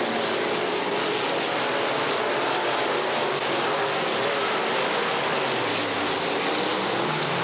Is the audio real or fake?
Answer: real